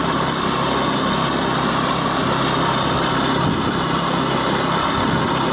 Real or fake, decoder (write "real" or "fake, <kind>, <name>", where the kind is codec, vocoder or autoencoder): real